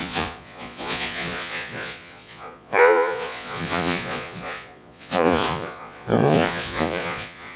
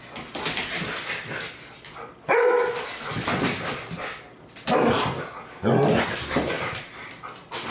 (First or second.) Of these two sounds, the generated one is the first